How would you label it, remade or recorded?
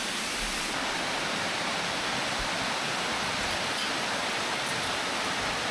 recorded